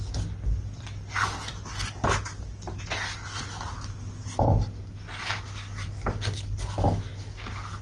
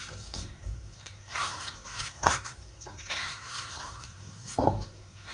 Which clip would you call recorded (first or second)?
first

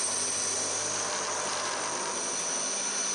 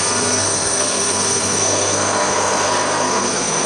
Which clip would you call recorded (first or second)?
first